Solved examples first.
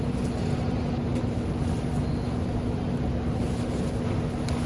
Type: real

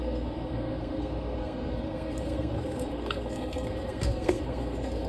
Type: fake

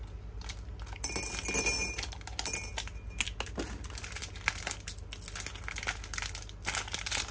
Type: real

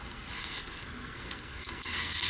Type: fake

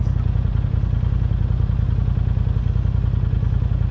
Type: real